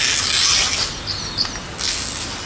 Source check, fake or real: real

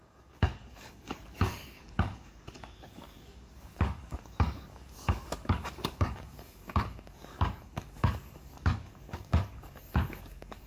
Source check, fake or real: fake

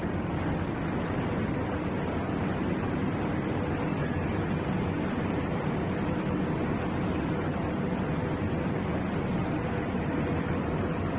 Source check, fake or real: fake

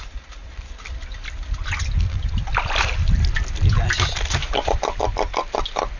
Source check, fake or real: real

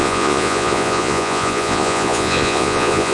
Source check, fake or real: fake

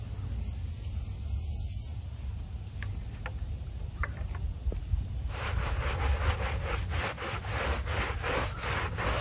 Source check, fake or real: real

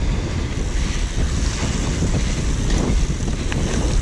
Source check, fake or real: real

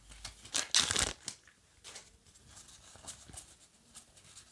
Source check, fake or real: real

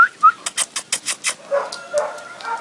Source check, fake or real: real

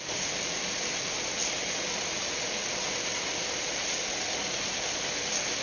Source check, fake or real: real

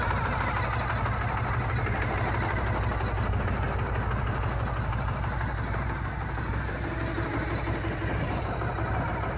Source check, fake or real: real